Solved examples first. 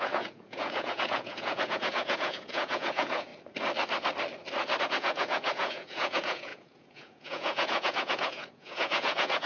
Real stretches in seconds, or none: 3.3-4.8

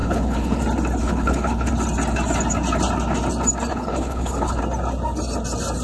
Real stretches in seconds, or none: 0.6-1.0; 1.7-3.7; 4.6-5.8

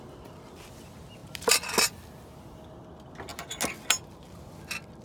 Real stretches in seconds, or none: 0.0-5.0

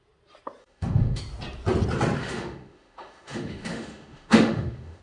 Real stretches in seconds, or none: 0.0-0.6; 1.2-2.2

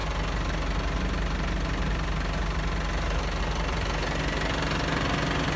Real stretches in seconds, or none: 0.0-5.6

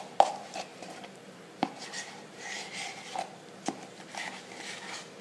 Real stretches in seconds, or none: 0.0-0.7; 2.7-5.2

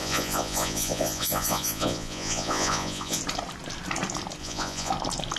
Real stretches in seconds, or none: 3.2-4.4; 4.9-5.4

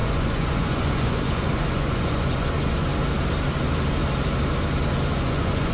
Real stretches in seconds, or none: 2.9-5.1